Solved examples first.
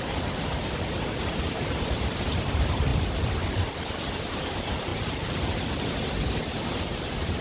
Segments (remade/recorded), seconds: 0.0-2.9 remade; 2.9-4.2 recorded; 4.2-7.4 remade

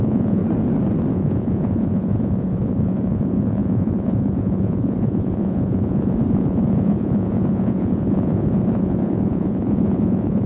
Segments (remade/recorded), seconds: 0.0-0.4 remade; 0.4-1.1 recorded; 1.1-10.5 remade

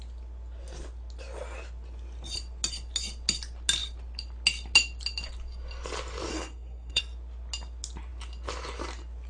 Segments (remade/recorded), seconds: 0.0-6.3 recorded; 6.3-7.0 remade; 7.0-9.3 recorded

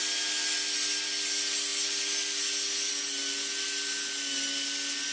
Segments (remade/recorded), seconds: 0.0-5.1 recorded

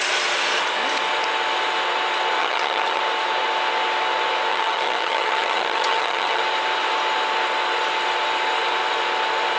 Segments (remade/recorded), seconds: 0.0-2.4 recorded; 2.4-3.0 remade; 3.0-4.5 recorded; 4.5-6.4 remade; 6.4-9.6 recorded